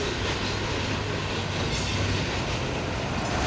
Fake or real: real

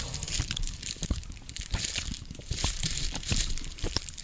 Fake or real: fake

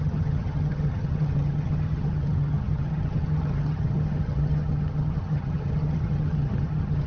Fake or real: fake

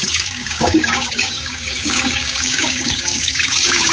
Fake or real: fake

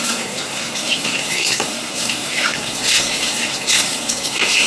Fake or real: fake